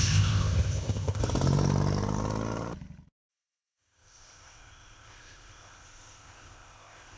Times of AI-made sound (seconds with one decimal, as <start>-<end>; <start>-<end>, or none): 0.0-1.2; 3.3-7.2